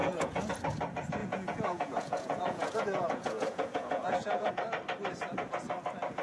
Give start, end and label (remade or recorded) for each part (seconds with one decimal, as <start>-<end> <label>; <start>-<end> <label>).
0.0-0.5 remade; 0.5-1.2 recorded; 1.2-4.5 remade; 4.5-6.2 recorded